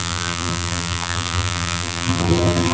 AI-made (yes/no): yes